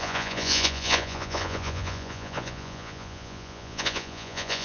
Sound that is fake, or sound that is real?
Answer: fake